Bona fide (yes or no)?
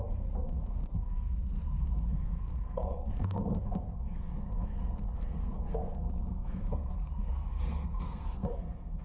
no